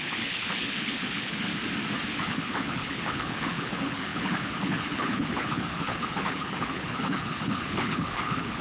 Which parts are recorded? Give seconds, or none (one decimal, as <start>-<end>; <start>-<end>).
1.5-2.2